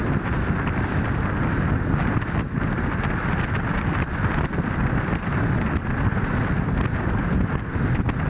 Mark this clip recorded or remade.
recorded